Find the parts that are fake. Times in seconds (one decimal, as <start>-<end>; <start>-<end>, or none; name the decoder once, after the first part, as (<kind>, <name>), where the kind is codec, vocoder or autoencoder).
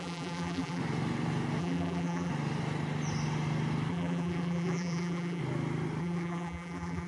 0.0-0.8 (vocoder, BigVGAN v2); 1.6-2.3; 3.9-5.4; 6.0-7.1